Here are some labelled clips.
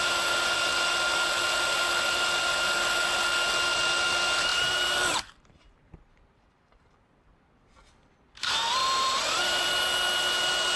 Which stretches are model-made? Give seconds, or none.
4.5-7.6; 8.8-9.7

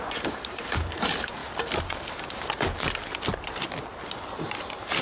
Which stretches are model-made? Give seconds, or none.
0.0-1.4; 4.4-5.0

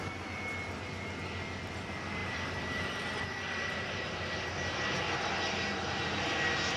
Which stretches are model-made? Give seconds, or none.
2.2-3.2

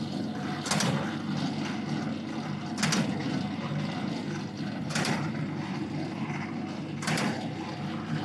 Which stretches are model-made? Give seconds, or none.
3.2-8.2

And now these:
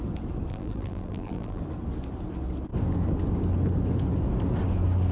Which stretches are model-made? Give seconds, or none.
0.5-1.6

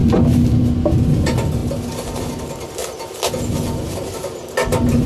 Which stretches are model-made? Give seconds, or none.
none

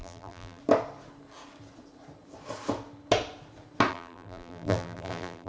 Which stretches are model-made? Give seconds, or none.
0.0-0.6; 3.9-5.5